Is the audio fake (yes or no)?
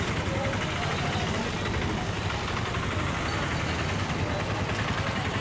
no